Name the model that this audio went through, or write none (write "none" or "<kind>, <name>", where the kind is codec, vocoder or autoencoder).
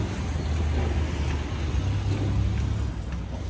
none